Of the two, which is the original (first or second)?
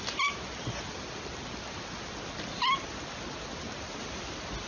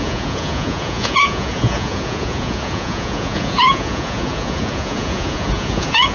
first